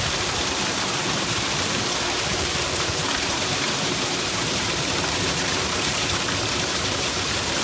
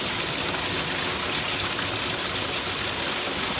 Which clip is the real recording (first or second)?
second